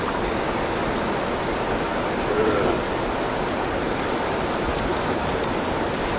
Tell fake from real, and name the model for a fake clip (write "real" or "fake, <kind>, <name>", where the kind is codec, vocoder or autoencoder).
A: real